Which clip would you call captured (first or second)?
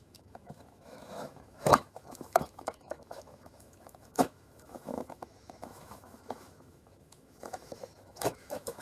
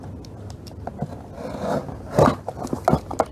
second